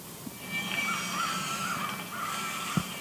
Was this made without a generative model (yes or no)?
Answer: yes